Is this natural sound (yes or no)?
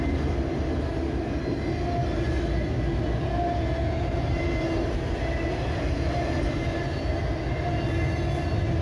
yes